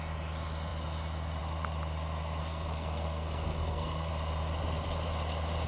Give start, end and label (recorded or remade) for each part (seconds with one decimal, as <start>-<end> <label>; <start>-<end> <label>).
0.0-2.4 recorded; 2.4-4.1 remade; 4.1-5.7 recorded